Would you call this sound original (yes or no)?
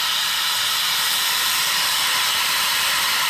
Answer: no